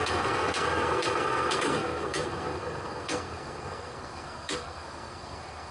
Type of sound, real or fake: fake